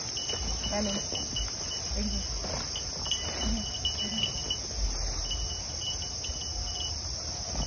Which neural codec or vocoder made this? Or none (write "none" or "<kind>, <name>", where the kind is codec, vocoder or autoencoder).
none